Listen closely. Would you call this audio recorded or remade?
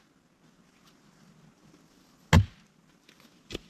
recorded